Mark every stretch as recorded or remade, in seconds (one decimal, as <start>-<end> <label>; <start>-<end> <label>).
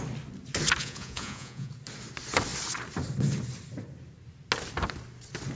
0.0-0.8 recorded; 0.8-1.7 remade; 1.7-5.6 recorded